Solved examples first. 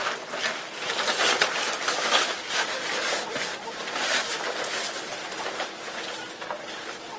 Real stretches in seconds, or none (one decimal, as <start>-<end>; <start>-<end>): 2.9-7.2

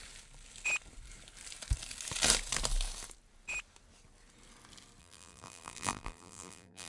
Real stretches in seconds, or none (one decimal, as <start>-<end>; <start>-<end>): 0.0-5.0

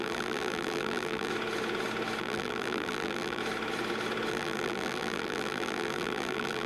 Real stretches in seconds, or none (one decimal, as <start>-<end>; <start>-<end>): 1.3-2.2; 3.4-4.3

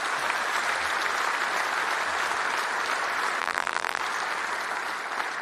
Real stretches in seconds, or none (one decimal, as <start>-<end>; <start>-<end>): 0.0-3.4; 4.0-5.4

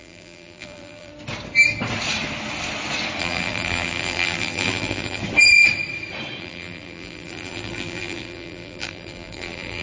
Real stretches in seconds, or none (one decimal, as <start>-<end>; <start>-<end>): 1.1-3.2; 5.2-6.4

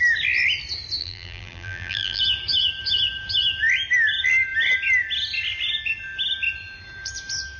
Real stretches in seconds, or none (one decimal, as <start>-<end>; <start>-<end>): 0.0-1.0; 2.2-7.6